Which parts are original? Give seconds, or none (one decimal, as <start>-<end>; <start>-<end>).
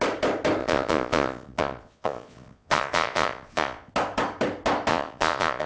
0.0-0.6; 3.9-4.9